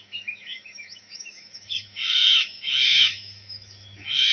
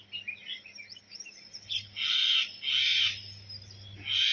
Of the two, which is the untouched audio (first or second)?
second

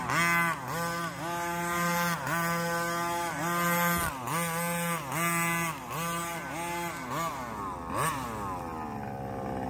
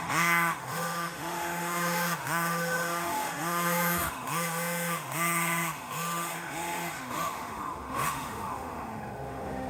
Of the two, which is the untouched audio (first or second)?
first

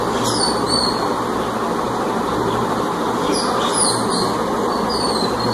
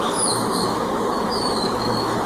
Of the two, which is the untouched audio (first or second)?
first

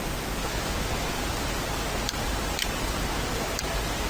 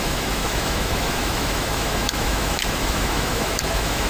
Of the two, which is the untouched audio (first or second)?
first